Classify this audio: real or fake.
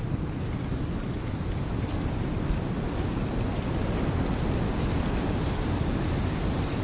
real